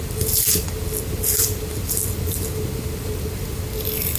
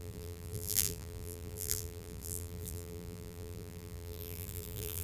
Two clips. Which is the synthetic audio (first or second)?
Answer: second